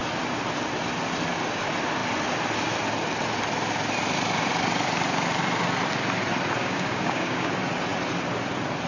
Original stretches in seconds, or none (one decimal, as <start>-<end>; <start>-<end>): 0.0-6.6; 7.5-8.9